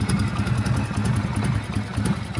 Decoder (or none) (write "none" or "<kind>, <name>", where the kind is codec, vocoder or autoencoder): none